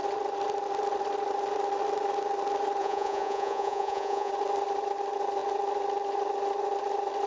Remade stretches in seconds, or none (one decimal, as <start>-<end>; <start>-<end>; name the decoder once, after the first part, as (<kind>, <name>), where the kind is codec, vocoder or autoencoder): 2.8-4.3 (vocoder, Vocos)